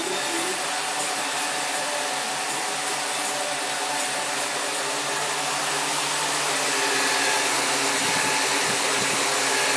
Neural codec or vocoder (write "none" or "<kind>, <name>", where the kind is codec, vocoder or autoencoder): none